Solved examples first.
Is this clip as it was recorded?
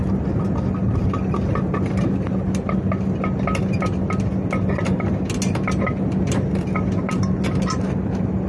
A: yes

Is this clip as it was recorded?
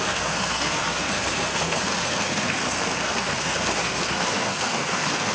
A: no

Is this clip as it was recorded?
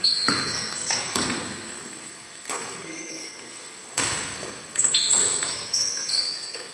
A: no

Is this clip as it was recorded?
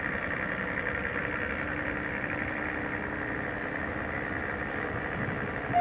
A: yes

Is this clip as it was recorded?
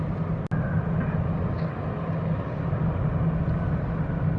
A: yes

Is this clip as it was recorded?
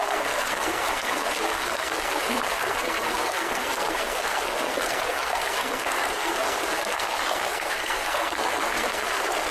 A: no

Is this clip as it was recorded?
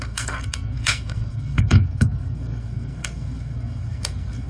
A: no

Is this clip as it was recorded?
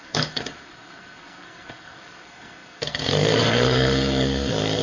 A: no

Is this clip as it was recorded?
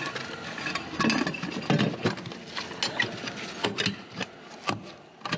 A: yes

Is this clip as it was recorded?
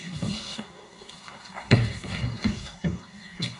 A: no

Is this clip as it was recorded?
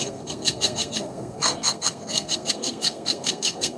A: no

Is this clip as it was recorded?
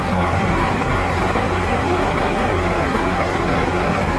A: no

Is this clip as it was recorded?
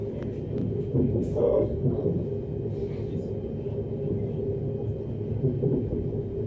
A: yes